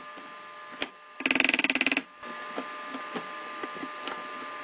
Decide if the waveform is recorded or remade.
recorded